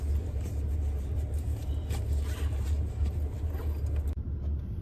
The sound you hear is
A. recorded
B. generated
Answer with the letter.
A